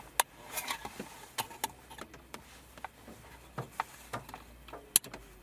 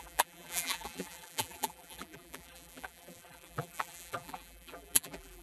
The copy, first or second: second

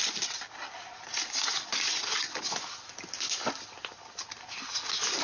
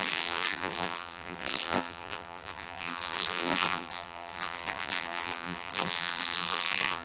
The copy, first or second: second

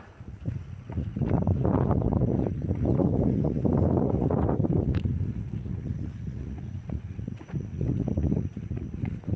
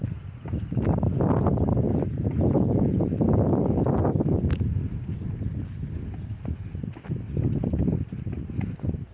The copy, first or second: first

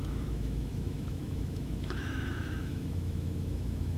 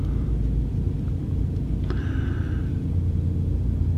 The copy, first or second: first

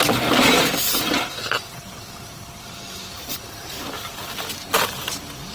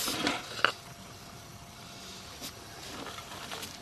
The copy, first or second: first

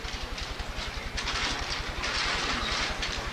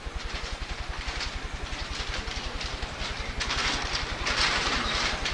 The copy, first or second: second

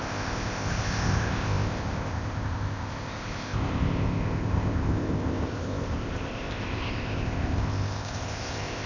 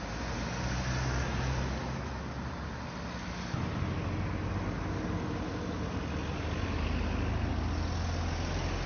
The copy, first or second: first